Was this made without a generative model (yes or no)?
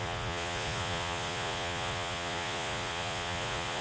no